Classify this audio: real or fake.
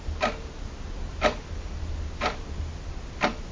real